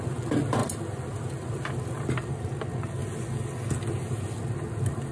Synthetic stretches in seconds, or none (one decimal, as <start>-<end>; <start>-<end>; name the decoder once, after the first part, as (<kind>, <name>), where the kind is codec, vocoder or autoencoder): none